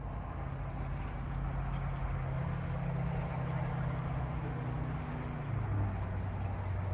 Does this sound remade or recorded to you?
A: recorded